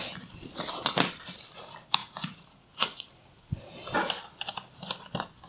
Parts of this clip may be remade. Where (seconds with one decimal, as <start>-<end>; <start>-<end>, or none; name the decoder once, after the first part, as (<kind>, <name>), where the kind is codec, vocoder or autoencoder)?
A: 2.0-3.5 (vocoder, Vocos)